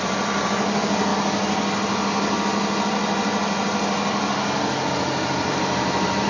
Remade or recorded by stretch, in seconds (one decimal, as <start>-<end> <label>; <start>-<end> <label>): 0.0-1.1 remade; 1.1-4.9 recorded; 4.9-6.3 remade